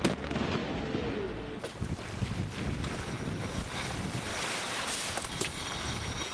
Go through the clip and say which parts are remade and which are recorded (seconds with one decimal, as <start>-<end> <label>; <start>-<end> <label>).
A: 0.0-6.3 recorded